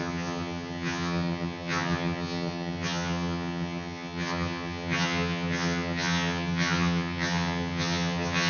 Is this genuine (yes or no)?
no